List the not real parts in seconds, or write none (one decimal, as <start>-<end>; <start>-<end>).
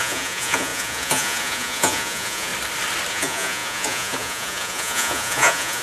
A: 0.0-2.5; 3.1-5.8